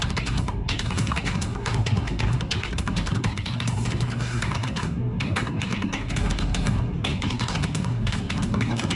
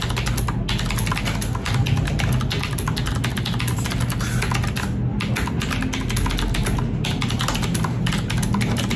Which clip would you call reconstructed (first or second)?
first